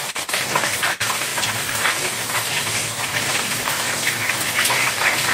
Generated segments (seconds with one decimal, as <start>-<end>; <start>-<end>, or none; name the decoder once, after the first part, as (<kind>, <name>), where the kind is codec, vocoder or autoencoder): 0.0-5.3 (codec, DAC)